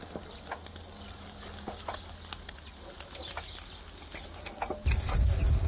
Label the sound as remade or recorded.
recorded